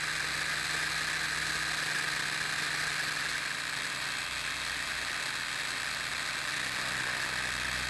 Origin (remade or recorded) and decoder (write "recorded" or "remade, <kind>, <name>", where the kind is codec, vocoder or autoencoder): recorded